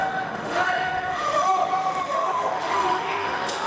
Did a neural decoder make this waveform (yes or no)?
yes